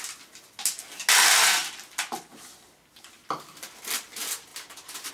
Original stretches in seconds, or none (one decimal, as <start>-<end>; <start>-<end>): 0.0-5.1